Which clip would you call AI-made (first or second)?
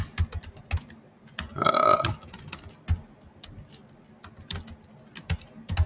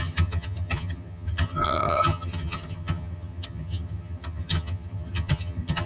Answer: second